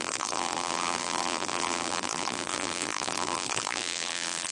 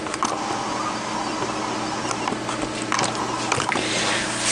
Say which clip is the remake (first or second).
first